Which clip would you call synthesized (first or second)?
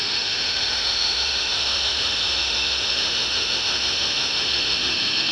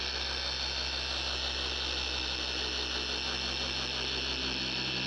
first